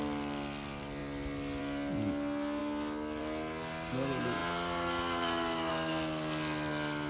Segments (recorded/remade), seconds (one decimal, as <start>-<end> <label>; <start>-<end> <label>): 0.0-7.1 recorded